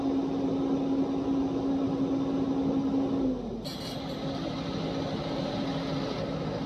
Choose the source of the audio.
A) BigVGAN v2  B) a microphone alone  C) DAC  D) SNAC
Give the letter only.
B